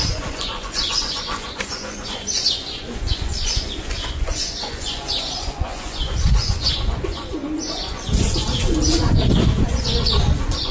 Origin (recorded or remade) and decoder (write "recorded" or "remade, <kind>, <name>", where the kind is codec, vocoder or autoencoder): remade, vocoder, Vocos